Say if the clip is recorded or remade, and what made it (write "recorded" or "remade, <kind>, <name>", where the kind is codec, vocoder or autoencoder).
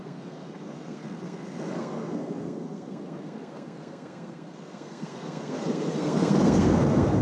remade, codec, SNAC